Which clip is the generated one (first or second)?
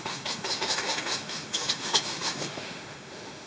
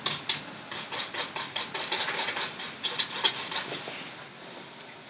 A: first